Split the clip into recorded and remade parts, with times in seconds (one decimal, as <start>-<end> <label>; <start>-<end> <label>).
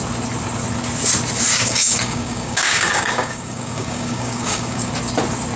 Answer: 0.0-1.5 recorded; 1.5-4.9 remade; 4.9-5.6 recorded